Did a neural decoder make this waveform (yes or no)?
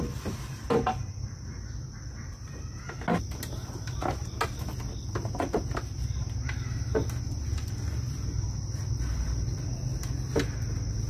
no